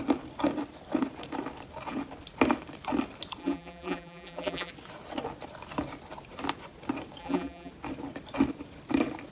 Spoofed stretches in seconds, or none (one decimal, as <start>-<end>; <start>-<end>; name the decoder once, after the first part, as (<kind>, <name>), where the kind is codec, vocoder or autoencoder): 3.4-4.7 (vocoder, BigVGAN v2); 7.2-7.7